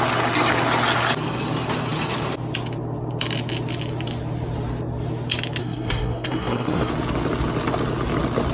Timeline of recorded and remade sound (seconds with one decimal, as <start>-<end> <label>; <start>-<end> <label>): 0.0-5.6 recorded; 5.6-6.9 remade; 6.9-8.5 recorded